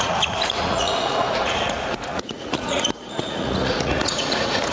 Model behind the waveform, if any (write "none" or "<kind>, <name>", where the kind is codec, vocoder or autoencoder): vocoder, Vocos